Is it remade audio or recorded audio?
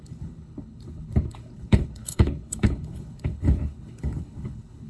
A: remade